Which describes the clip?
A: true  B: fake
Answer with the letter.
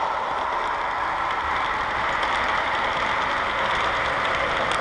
A